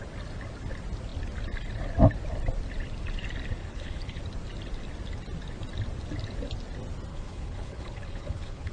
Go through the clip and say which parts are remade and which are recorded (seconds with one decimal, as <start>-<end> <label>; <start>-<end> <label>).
0.0-3.6 recorded; 3.6-4.2 remade; 4.2-7.1 recorded; 7.1-8.7 remade